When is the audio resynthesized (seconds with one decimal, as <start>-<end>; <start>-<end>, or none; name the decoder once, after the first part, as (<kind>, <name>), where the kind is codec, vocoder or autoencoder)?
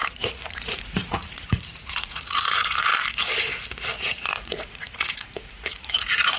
0.0-2.9 (vocoder, Vocos); 4.0-6.4